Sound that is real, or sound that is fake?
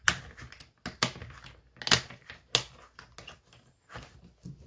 real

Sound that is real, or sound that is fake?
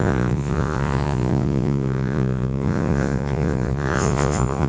fake